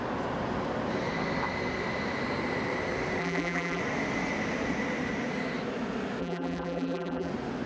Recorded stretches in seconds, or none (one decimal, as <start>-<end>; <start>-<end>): 0.0-3.2; 3.8-6.2; 7.3-7.7